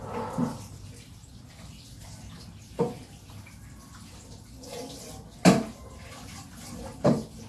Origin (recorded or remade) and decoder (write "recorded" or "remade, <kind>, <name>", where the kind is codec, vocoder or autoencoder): recorded